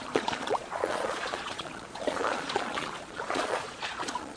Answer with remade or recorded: remade